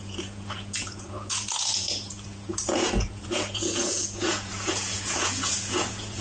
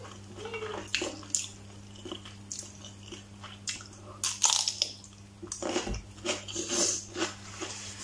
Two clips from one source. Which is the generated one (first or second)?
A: first